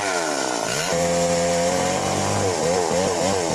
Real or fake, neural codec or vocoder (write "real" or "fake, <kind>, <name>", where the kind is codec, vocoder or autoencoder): fake, vocoder, BigVGAN v2